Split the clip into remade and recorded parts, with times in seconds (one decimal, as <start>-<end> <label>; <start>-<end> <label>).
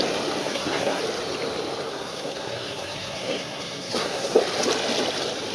0.0-0.4 recorded; 0.4-1.0 remade; 1.0-1.9 recorded; 1.9-4.4 remade; 4.4-5.5 recorded